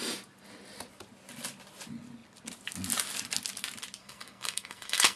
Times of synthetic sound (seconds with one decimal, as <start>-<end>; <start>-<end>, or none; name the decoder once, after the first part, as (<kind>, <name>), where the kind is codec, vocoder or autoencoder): 4.0-5.2 (codec, SNAC)